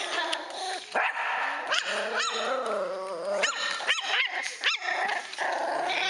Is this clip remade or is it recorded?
recorded